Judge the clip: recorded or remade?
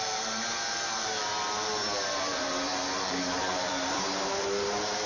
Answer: remade